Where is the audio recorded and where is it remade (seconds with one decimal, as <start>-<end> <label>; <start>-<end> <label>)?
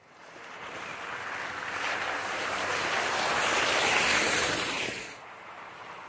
0.0-0.9 remade; 0.9-2.0 recorded; 2.0-6.1 remade